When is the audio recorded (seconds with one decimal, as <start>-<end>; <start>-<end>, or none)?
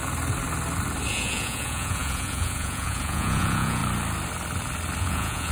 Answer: 0.0-1.1; 3.8-5.0